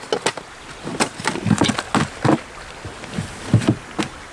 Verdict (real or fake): real